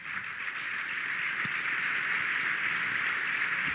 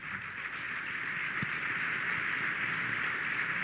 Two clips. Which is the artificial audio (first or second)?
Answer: first